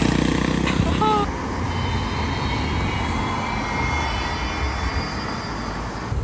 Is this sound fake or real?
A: real